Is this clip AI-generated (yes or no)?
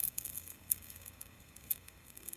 yes